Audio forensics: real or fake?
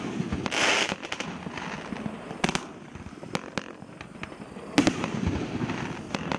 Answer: real